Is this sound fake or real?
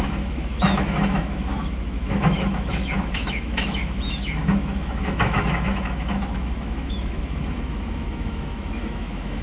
fake